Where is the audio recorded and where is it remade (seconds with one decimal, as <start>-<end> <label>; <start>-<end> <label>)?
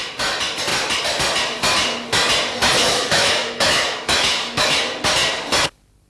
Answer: 0.0-2.8 recorded; 2.8-4.8 remade; 4.8-6.1 recorded